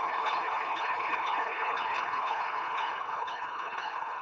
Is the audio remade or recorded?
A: remade